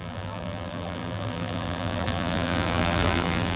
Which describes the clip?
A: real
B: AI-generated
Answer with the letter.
B